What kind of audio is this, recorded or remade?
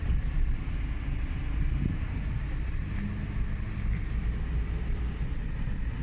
recorded